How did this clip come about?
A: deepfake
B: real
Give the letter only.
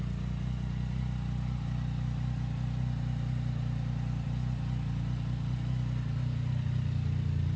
B